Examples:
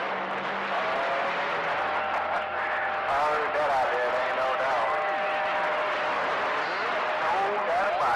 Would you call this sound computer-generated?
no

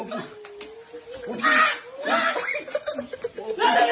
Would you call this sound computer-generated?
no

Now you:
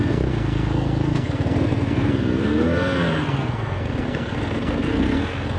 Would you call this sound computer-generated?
yes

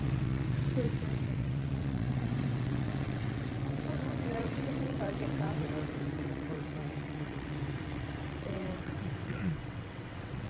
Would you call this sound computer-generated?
yes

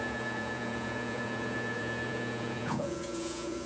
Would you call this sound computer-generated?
yes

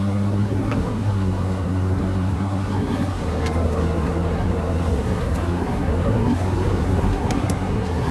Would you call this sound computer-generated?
yes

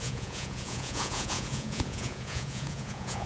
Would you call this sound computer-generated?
yes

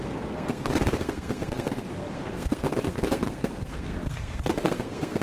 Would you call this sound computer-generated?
yes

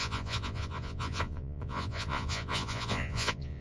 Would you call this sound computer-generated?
yes